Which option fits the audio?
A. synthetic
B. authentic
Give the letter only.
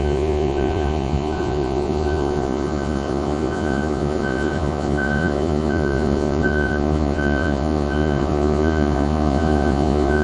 A